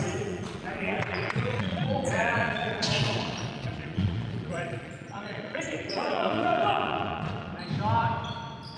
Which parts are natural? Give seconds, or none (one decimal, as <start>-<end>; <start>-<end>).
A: 7.5-8.8